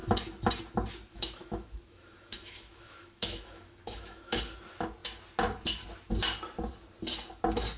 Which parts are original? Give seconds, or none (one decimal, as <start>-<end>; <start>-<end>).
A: 0.0-1.1; 4.4-7.8